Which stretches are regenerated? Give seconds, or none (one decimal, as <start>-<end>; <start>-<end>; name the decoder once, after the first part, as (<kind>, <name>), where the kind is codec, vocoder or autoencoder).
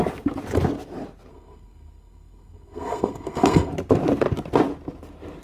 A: 1.3-3.7 (codec, SNAC)